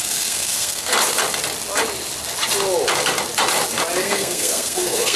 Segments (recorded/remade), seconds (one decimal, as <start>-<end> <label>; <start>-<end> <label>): 0.0-0.9 remade; 0.9-4.0 recorded; 4.0-5.2 remade